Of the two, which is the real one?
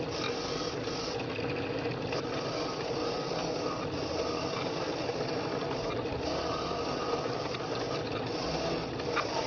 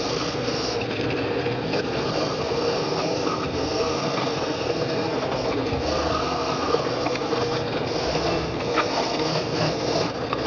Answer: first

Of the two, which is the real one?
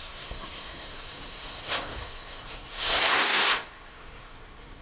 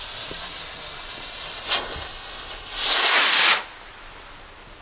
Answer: second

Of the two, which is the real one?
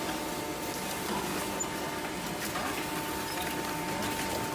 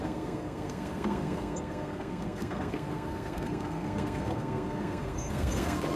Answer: first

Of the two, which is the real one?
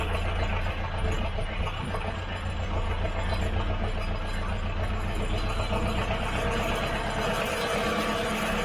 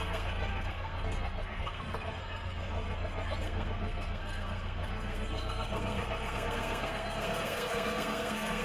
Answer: first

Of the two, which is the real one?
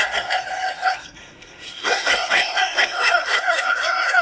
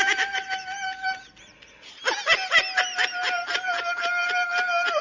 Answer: second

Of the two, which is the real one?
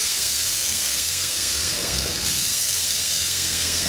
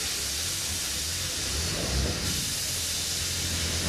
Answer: second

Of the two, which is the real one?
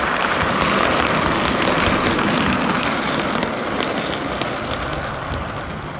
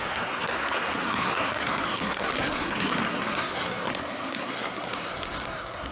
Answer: first